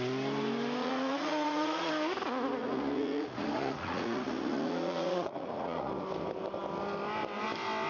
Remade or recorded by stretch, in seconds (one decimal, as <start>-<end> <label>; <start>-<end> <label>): 0.0-0.8 recorded; 0.8-1.9 remade; 1.9-2.6 recorded; 2.6-5.9 remade; 5.9-7.9 recorded